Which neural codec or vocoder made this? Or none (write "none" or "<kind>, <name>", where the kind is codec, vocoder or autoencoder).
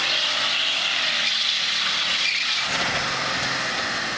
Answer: none